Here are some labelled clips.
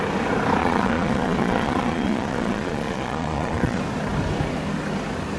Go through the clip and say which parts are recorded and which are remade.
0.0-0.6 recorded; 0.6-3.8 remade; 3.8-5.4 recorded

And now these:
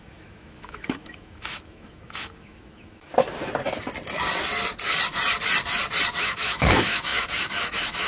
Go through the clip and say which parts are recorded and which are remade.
0.0-3.1 remade; 3.1-6.2 recorded; 6.2-8.1 remade

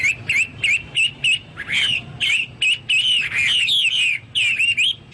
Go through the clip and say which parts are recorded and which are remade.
0.0-5.1 recorded

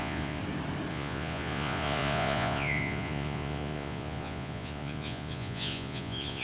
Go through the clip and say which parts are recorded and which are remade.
0.0-0.4 remade; 0.4-0.9 recorded; 0.9-6.4 remade

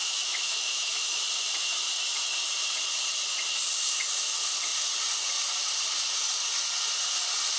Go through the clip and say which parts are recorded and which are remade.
0.0-1.2 remade; 1.2-7.6 recorded

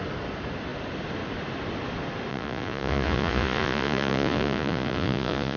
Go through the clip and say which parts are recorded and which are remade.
0.0-2.3 recorded; 2.3-5.6 remade

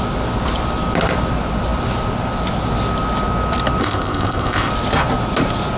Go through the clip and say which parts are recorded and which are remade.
0.0-3.8 recorded; 3.8-4.7 remade; 4.7-5.8 recorded

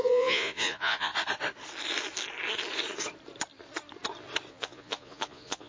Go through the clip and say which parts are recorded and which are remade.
0.0-1.1 remade; 1.1-4.5 recorded; 4.5-5.7 remade